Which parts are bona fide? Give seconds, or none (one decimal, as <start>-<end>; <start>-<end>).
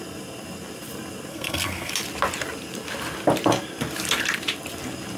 0.0-1.3; 1.9-5.2